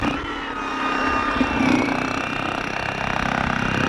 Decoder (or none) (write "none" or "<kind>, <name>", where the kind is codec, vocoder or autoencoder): none